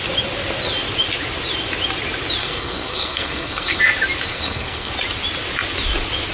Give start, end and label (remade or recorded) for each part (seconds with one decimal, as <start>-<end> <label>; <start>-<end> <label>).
0.0-2.4 recorded; 2.4-3.8 remade; 3.8-4.3 recorded; 4.3-4.9 remade; 4.9-6.3 recorded